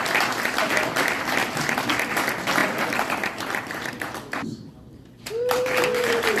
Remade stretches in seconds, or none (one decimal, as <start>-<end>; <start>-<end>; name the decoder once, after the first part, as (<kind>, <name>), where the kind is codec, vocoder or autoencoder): 1.4-2.1 (vocoder, BigVGAN v2); 2.6-6.4